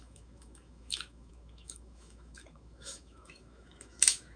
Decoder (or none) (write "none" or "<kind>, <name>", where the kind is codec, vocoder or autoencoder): autoencoder, DAC-VAE